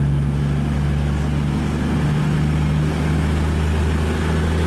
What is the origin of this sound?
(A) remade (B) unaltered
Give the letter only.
B